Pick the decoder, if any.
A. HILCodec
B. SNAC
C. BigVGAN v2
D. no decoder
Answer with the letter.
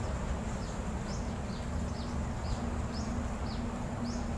D